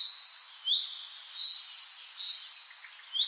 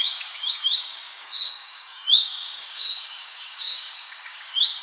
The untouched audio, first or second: first